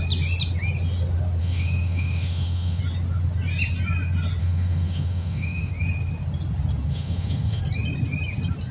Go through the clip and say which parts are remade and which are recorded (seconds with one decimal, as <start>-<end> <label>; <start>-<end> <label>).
0.0-1.4 recorded; 1.4-2.8 remade; 2.8-4.4 recorded; 4.4-5.7 remade; 5.7-6.9 recorded; 6.9-7.6 remade; 7.6-8.7 recorded